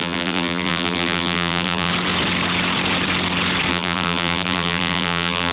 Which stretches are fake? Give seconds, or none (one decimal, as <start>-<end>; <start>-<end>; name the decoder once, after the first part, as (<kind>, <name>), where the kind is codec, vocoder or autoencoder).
0.0-1.9 (vocoder, BigVGAN v2); 3.7-5.5